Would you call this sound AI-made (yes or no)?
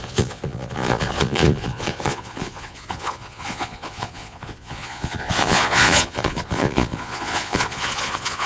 yes